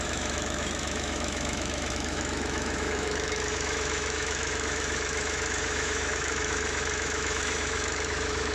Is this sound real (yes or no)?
no